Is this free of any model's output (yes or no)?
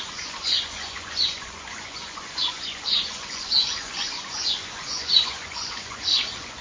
no